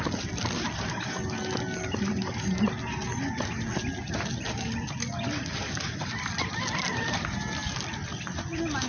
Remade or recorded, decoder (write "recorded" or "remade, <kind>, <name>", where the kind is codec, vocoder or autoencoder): recorded